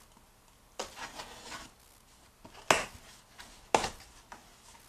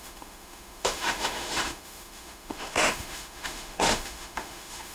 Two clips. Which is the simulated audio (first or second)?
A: second